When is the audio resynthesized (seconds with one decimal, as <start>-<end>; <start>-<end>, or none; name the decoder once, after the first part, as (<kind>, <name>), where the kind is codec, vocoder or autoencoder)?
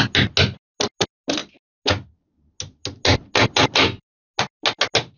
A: none